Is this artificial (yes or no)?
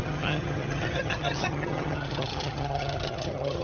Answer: yes